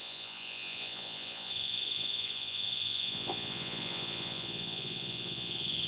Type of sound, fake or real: fake